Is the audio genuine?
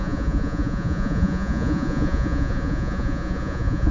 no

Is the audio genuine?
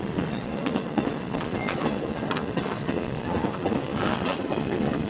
no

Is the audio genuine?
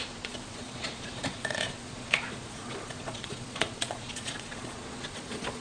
no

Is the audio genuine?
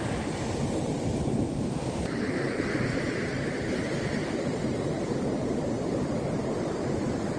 yes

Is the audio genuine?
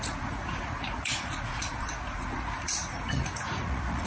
no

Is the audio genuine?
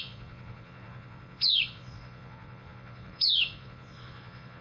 no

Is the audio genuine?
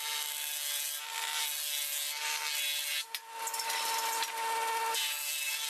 yes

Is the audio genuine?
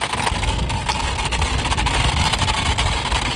yes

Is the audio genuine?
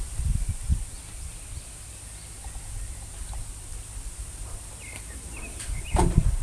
yes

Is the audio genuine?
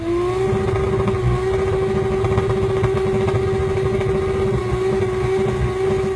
yes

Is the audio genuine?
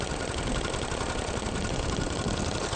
yes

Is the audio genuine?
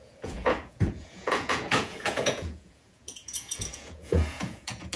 no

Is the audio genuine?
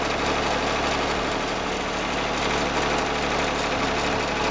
yes